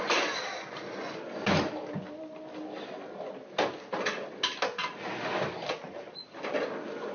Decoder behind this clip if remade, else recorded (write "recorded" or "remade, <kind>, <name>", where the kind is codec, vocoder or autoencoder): recorded